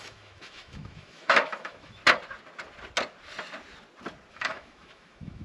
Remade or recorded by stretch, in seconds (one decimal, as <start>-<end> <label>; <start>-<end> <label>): 0.0-2.0 remade; 2.0-4.3 recorded; 4.3-5.4 remade